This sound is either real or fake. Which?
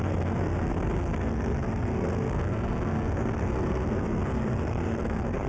fake